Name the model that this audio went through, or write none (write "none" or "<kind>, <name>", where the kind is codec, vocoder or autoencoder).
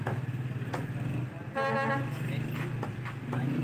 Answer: none